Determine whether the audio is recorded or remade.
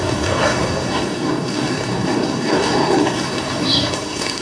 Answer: remade